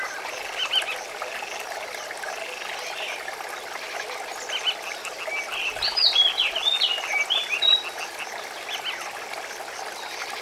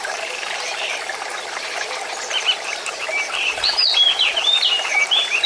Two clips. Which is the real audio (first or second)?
first